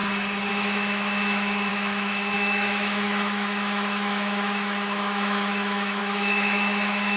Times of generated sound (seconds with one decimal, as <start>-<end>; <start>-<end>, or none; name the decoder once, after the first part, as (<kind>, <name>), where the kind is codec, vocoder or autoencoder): 0.5-7.2 (autoencoder, DAC-VAE)